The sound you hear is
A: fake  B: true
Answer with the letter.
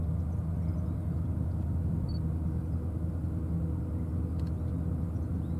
B